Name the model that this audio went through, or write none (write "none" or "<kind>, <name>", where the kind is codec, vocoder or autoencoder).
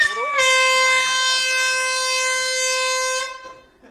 none